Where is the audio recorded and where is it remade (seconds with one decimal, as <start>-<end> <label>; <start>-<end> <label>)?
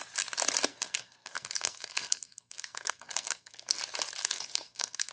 0.0-0.7 recorded; 0.7-3.8 remade; 3.8-4.2 recorded; 4.2-5.1 remade